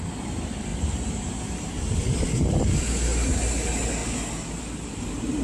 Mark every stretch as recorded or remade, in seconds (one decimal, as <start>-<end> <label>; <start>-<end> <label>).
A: 0.0-5.4 recorded